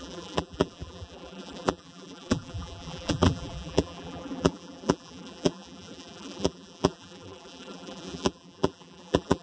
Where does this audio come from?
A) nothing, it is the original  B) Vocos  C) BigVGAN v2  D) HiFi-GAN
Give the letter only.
C